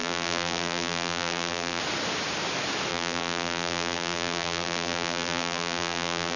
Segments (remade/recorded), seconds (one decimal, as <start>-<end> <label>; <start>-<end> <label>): 0.0-1.8 remade; 1.8-2.9 recorded; 2.9-6.4 remade